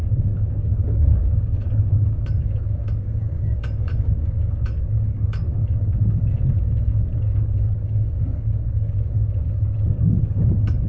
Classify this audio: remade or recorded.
remade